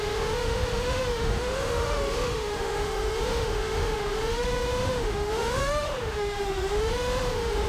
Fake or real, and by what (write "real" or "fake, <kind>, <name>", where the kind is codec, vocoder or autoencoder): fake, autoencoder, DAC-VAE